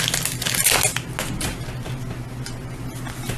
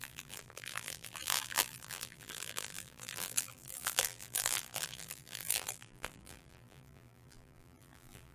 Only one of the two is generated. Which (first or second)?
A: second